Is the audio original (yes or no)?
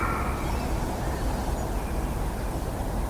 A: yes